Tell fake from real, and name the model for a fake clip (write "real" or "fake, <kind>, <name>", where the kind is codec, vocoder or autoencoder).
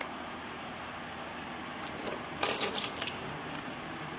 real